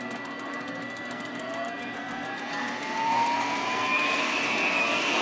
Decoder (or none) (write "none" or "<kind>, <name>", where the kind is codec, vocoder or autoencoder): codec, SNAC